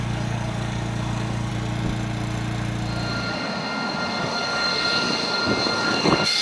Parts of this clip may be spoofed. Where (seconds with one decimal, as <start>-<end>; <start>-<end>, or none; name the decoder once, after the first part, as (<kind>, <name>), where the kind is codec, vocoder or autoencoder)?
0.0-1.5 (codec, DAC); 4.2-4.7; 5.7-6.4